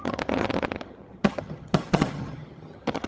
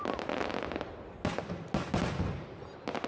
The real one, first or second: second